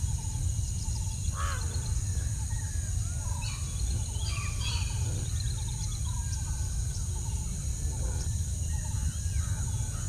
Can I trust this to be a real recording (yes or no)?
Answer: yes